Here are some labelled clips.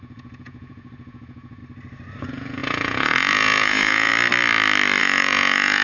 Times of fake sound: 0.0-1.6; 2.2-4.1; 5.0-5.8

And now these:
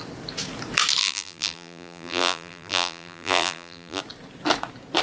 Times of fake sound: 1.0-4.0

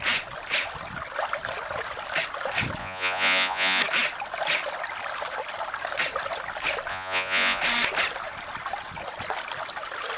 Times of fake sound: 2.8-3.8; 6.9-7.6

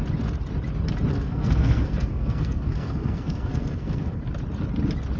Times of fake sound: 1.1-4.2